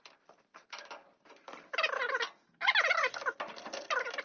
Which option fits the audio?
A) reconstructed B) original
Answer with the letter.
B